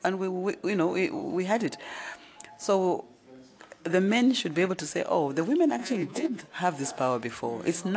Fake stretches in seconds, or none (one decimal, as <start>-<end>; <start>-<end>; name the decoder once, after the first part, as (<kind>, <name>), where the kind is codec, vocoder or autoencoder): 5.8-6.4 (vocoder, Vocos)